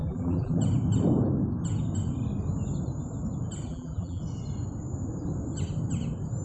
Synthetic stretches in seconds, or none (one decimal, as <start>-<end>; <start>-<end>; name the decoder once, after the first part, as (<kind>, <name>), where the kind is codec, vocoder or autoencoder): 0.0-0.6 (vocoder, BigVGAN v2); 3.7-4.2